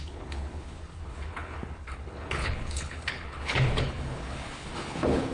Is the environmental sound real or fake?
fake